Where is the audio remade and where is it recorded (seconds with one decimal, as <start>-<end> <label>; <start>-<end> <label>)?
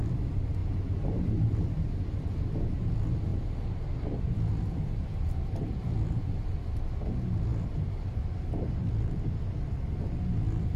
0.0-3.3 recorded; 3.3-6.7 remade; 6.7-10.8 recorded